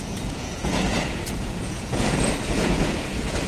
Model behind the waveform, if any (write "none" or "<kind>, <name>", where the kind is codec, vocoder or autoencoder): vocoder, Vocos